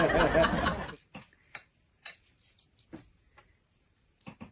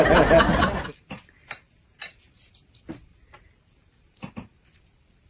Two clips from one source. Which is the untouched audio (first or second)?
first